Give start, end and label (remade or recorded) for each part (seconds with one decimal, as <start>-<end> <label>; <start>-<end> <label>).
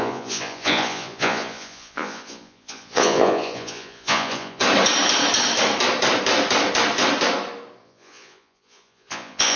0.0-4.6 remade; 4.6-7.8 recorded; 7.8-9.6 remade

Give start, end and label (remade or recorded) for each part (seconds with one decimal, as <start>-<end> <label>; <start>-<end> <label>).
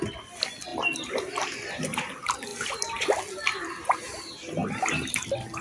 0.0-5.6 recorded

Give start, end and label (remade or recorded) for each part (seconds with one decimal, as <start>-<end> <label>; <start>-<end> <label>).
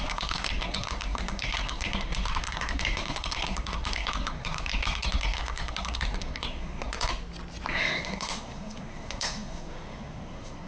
0.0-7.1 remade; 7.1-7.7 recorded; 7.7-10.7 remade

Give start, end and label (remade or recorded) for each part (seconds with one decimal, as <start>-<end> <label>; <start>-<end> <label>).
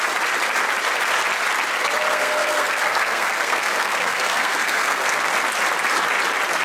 0.0-2.1 recorded; 2.1-5.3 remade; 5.3-6.6 recorded